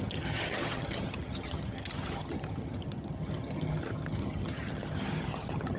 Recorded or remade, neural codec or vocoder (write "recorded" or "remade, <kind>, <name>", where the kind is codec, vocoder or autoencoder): remade, vocoder, HiFi-GAN